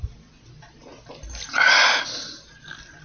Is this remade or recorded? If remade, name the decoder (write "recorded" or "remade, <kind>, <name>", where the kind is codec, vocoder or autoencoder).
recorded